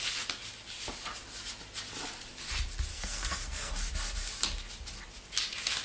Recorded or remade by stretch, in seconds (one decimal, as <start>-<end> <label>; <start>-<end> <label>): 0.0-2.9 recorded; 2.9-3.9 remade; 3.9-5.8 recorded